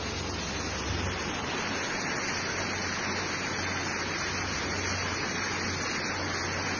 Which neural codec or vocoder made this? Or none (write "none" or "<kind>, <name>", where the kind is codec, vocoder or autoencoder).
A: none